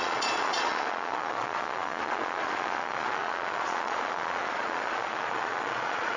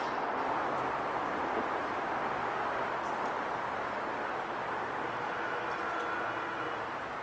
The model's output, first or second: first